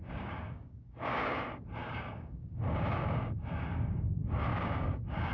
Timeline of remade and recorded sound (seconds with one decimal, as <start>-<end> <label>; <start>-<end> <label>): 0.0-1.3 remade; 1.3-1.8 recorded; 1.8-4.0 remade; 4.0-4.5 recorded; 4.5-5.3 remade